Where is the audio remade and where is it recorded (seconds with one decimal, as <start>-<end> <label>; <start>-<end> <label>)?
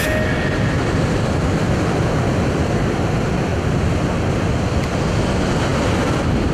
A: 0.0-6.5 recorded